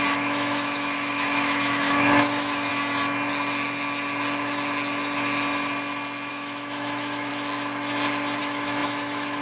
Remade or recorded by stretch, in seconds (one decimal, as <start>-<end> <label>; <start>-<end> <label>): 0.0-2.7 remade; 2.7-6.3 recorded; 6.3-7.3 remade; 7.3-8.4 recorded; 8.4-9.4 remade